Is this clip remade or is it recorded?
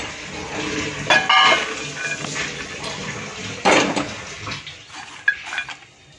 recorded